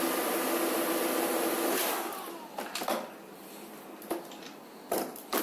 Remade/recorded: recorded